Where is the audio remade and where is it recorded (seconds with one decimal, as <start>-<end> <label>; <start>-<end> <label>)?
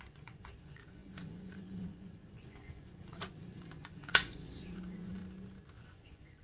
0.0-5.2 remade; 5.2-5.8 recorded; 5.8-6.4 remade